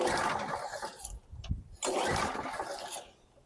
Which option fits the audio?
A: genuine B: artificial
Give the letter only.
A